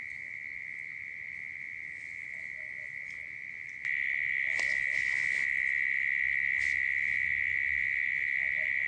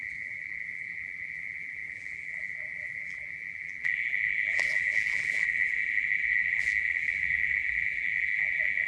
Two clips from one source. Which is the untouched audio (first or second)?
first